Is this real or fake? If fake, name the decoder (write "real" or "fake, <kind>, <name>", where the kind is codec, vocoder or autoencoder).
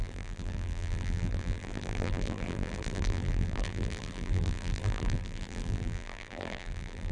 fake, vocoder, BigVGAN v2